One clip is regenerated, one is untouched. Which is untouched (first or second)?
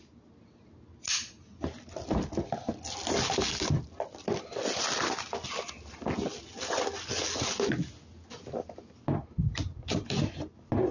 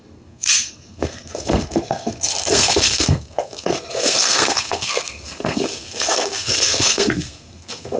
first